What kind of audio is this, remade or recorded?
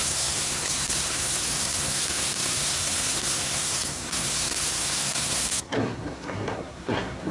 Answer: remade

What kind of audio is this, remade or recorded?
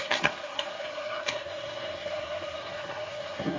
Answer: remade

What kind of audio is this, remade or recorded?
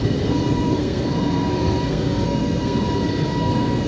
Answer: remade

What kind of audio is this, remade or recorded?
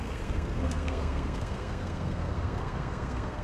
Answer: remade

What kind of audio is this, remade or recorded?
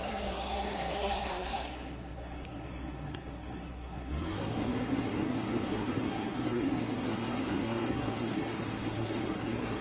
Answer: remade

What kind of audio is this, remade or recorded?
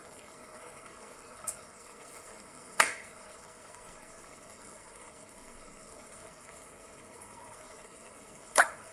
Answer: remade